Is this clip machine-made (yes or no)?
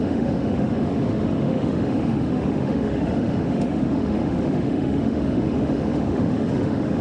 yes